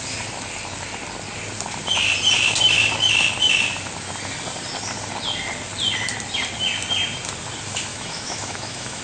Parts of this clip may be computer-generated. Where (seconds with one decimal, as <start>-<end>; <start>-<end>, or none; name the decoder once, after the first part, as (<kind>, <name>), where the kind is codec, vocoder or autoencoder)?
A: 7.9-9.0 (autoencoder, DAC-VAE)